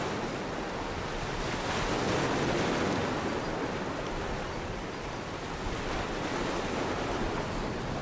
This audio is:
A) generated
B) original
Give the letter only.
B